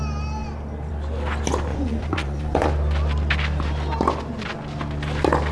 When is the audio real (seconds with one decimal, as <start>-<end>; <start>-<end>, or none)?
0.0-1.7; 2.7-5.5